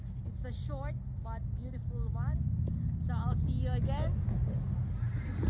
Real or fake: real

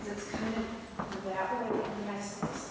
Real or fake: real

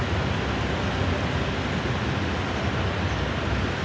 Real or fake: real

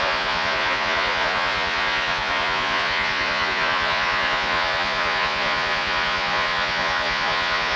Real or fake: fake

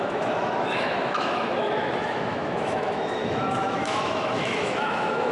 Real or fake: fake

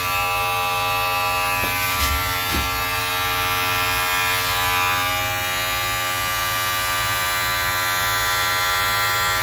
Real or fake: real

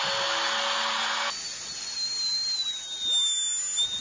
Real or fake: real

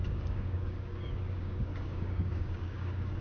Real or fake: fake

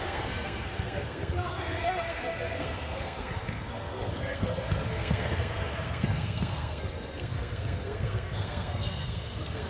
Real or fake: fake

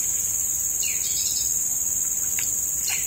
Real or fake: real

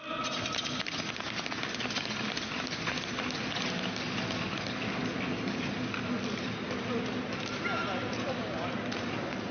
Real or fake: real